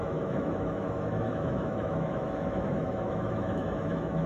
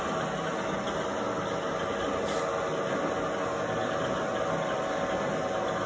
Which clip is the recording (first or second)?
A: second